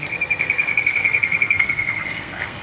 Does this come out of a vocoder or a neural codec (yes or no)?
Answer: yes